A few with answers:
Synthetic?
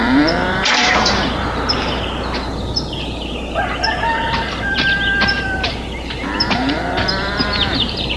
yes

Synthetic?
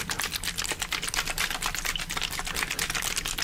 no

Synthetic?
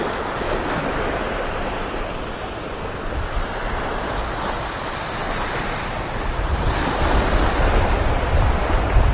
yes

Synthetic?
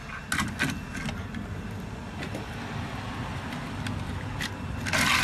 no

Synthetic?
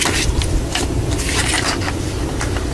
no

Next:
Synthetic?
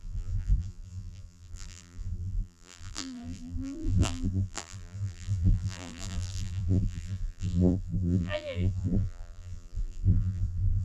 yes